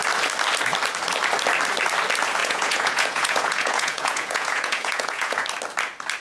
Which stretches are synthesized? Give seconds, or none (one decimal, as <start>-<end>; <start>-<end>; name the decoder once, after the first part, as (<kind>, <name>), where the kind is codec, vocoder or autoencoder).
2.4-5.5 (vocoder, Vocos)